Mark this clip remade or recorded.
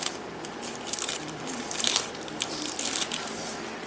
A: recorded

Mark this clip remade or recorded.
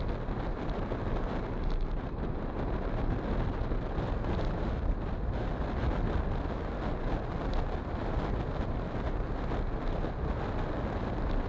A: recorded